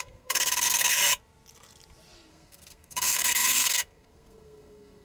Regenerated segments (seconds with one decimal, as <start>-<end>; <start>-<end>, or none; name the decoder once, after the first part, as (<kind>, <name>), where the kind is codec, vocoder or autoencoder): 0.0-1.0 (codec, SNAC); 2.3-5.0